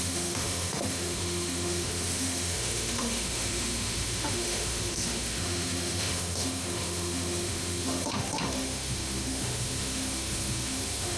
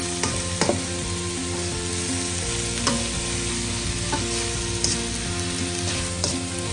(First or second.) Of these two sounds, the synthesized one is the first